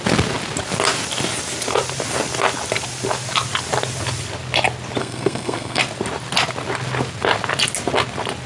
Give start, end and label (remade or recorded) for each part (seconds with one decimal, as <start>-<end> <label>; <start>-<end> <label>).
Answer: 0.0-5.0 recorded; 5.0-5.8 remade; 5.8-8.5 recorded